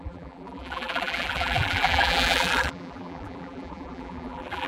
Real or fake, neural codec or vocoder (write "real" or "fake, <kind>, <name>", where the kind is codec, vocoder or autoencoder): fake, vocoder, BigVGAN v2